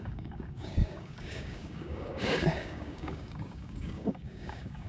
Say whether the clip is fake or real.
fake